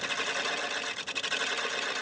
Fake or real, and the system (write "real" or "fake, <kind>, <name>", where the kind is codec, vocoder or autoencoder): real